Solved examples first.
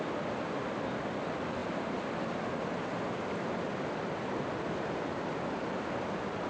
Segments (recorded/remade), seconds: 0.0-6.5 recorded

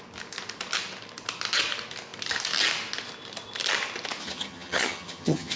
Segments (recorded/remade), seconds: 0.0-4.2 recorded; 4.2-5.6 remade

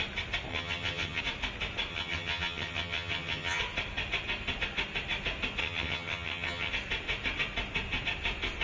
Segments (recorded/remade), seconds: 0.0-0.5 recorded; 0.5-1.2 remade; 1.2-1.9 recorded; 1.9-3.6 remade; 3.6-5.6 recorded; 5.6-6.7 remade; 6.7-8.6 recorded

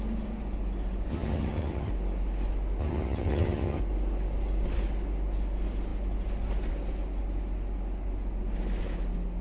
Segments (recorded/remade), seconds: 0.0-1.1 recorded; 1.1-1.9 remade; 1.9-2.8 recorded; 2.8-3.8 remade; 3.8-9.4 recorded

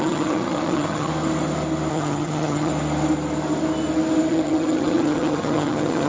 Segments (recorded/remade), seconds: 0.0-1.1 remade; 1.1-1.9 recorded; 1.9-2.7 remade; 2.7-4.3 recorded; 4.3-6.1 remade

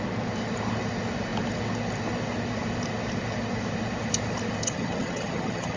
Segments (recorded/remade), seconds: 0.0-4.6 recorded; 4.6-5.8 remade

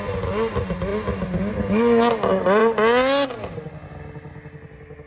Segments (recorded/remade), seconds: 0.0-5.1 recorded